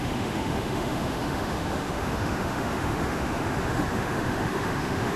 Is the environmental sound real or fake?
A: fake